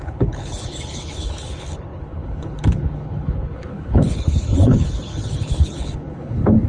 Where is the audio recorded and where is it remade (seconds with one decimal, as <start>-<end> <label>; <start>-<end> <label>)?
0.0-6.7 remade